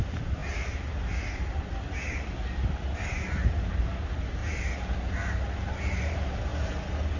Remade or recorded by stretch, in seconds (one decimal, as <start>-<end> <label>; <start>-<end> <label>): 0.0-0.4 remade; 0.4-3.7 recorded; 3.7-4.4 remade; 4.4-5.7 recorded; 5.7-6.5 remade; 6.5-7.2 recorded